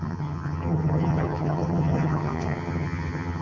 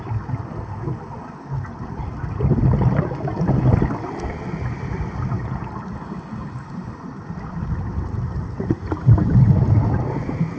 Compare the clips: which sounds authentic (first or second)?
second